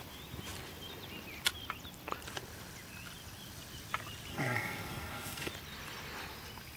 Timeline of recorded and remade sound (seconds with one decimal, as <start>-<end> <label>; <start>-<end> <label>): 0.0-4.3 recorded; 4.3-5.5 remade; 5.5-6.8 recorded